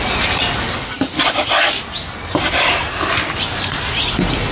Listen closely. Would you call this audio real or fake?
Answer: real